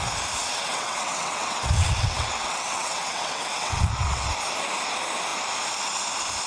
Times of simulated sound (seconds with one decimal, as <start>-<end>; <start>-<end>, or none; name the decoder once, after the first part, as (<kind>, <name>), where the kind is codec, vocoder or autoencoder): 0.4-4.3 (vocoder, WaveNeXt)